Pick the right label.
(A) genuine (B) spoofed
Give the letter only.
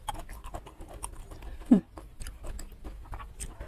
A